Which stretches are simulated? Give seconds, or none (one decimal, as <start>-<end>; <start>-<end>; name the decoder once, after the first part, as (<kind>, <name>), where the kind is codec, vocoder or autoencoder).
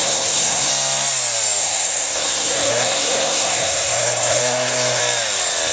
0.0-0.7 (codec, SNAC); 1.6-5.0